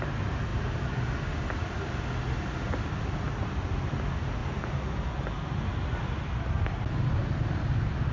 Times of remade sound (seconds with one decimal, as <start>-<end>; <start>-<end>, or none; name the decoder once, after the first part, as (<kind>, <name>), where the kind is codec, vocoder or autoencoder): none